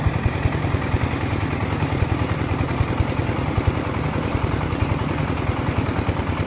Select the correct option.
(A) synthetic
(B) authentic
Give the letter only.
B